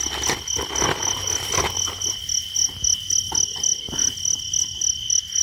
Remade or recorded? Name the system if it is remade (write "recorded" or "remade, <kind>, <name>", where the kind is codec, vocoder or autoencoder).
recorded